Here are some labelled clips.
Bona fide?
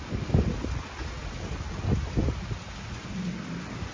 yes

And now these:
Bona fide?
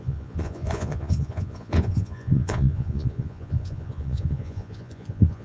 no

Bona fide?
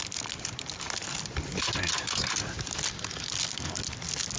yes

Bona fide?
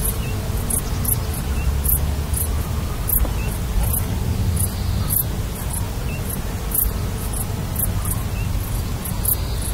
yes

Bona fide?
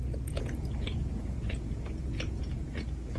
no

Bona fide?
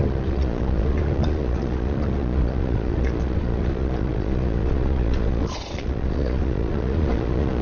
no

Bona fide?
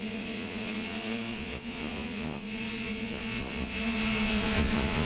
no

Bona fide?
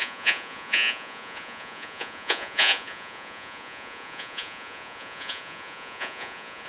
no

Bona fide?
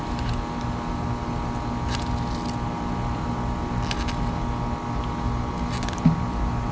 yes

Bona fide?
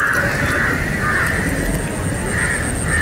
yes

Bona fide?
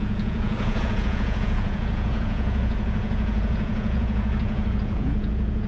no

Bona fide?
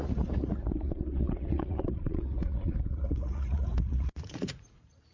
no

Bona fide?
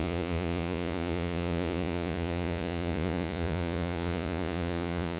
no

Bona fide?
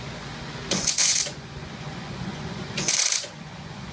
no